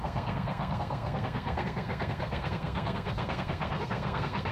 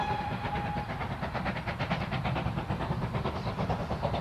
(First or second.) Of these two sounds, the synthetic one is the first